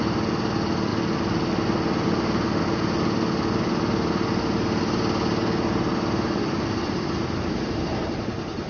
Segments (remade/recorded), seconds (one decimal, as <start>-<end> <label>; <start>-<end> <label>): 0.0-8.7 recorded